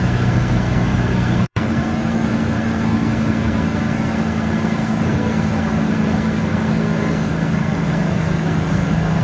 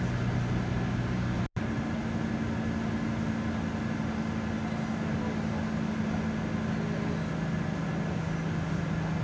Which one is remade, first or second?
first